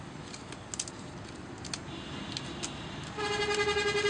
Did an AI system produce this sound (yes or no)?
no